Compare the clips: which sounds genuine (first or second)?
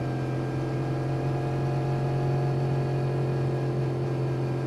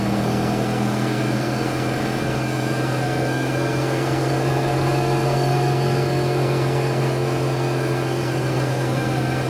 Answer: first